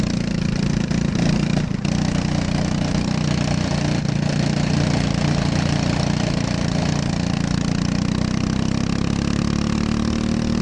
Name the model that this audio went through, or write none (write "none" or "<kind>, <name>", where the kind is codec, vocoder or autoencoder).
none